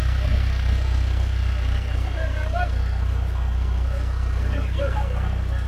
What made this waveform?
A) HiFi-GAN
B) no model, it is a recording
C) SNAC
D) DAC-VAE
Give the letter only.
C